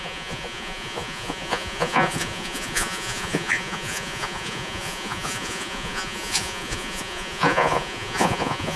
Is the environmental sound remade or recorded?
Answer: remade